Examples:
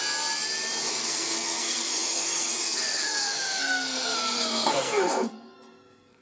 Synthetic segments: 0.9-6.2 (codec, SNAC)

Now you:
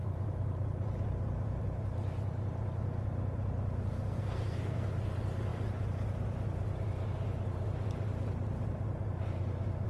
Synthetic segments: 3.9-4.9 (codec, SNAC)

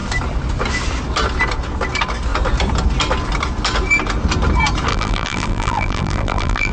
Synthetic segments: 4.9-6.7 (vocoder, BigVGAN v2)

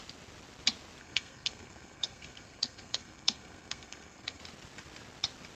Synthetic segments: 1.0-4.4 (codec, SNAC)